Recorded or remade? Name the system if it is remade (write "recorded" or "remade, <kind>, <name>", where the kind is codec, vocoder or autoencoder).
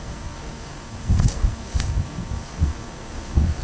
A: remade, codec, SNAC